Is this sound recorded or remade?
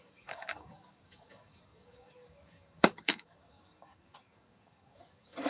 remade